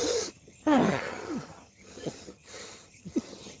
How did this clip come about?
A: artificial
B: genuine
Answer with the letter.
A